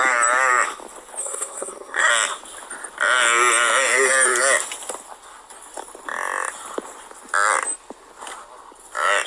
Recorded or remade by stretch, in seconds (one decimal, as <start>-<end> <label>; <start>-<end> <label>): 0.0-1.2 recorded; 1.2-2.1 remade; 2.1-9.3 recorded

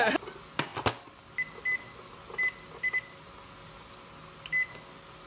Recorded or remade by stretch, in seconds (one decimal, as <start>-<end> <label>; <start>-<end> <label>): 0.0-5.3 recorded

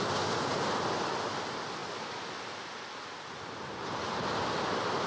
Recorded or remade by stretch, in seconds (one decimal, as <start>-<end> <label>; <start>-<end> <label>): 0.0-5.1 recorded